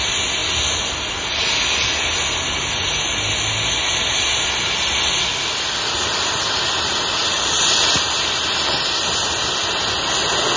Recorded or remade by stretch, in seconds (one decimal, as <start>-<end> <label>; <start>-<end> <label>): 0.0-10.6 recorded